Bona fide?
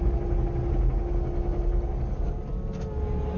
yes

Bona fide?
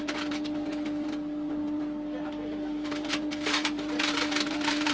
yes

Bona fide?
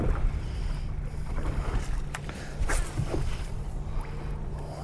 no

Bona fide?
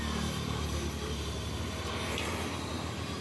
yes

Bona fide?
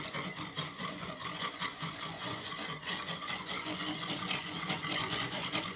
no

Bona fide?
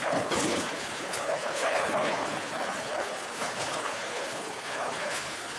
no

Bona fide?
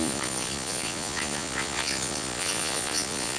no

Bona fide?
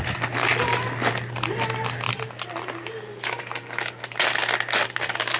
yes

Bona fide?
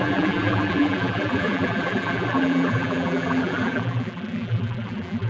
no